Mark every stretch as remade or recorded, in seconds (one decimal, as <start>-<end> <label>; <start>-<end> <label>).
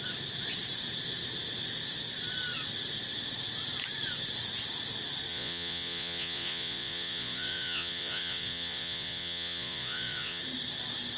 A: 0.0-5.3 recorded; 5.3-10.4 remade; 10.4-11.2 recorded